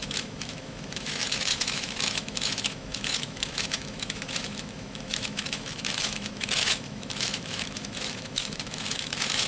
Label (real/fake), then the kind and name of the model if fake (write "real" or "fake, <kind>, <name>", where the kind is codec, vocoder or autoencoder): fake, autoencoder, DAC-VAE